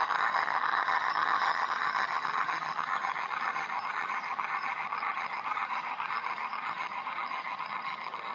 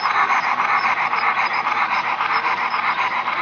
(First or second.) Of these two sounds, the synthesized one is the first